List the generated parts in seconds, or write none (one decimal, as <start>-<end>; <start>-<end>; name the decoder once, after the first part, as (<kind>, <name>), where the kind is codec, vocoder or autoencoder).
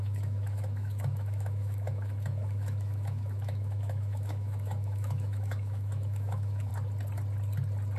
0.0-6.7 (autoencoder, DAC-VAE)